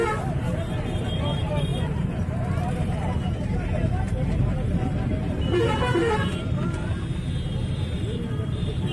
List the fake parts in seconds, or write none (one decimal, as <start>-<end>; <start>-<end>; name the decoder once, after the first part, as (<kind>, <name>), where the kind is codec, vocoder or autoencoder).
0.0-6.3 (vocoder, BigVGAN v2); 7.7-8.9

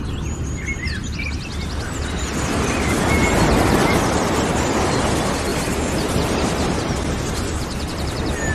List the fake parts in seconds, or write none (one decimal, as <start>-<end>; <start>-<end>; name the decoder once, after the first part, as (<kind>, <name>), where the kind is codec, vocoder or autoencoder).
5.5-7.2 (vocoder, BigVGAN v2)